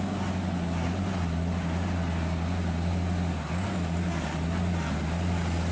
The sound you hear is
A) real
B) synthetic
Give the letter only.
A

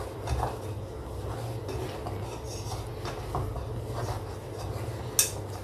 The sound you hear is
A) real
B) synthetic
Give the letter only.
A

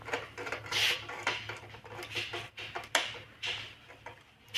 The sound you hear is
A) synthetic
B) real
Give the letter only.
B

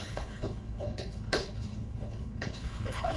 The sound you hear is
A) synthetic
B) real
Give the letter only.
A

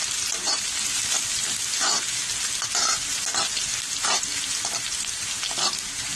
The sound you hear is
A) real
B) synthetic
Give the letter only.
A